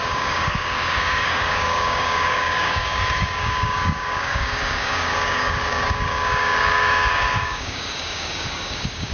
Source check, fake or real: fake